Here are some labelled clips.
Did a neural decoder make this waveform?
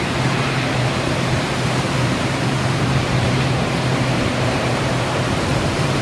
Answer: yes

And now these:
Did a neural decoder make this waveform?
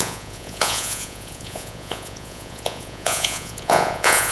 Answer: yes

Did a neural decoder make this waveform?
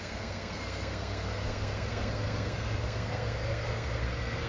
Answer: yes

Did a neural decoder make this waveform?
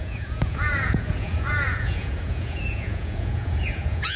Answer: yes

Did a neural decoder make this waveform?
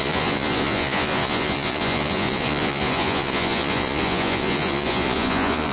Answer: yes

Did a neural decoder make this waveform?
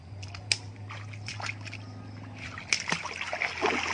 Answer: no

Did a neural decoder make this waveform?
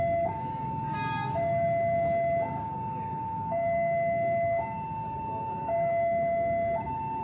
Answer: yes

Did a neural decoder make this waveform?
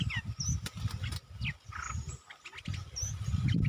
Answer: no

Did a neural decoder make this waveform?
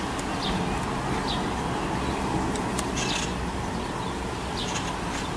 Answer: no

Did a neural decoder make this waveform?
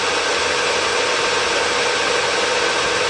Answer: no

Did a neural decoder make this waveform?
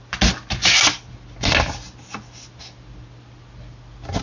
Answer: no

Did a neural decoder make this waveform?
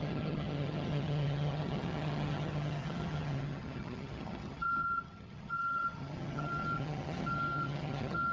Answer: yes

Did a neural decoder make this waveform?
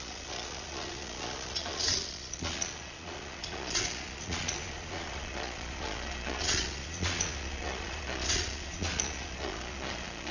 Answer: yes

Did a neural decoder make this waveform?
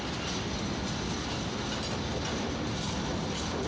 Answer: no